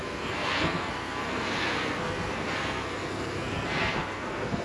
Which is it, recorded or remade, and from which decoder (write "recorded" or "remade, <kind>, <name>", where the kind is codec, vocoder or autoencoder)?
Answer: remade, codec, SNAC